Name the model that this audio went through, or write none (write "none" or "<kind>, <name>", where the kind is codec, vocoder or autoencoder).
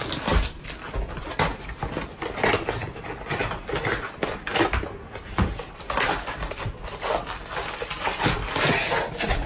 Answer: none